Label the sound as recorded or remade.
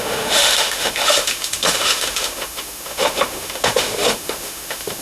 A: remade